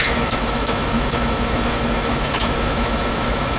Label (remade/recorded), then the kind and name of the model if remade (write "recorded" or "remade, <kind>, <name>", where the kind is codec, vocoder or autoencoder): remade, autoencoder, DAC-VAE